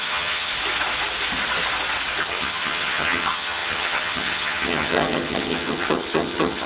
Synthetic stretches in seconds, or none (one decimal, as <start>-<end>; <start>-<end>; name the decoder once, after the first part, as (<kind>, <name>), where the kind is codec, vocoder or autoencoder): 0.0-0.5 (vocoder, HiFi-GAN); 2.2-6.7